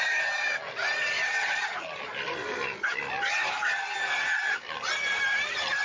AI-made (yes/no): no